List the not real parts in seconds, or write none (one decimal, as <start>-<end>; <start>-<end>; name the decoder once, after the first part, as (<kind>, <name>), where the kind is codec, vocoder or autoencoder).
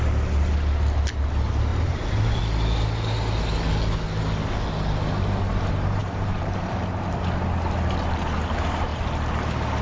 1.7-2.4 (vocoder, BigVGAN v2); 6.0-7.1